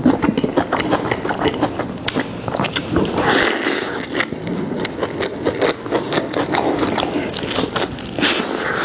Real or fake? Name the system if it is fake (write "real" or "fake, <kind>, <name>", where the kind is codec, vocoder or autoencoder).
real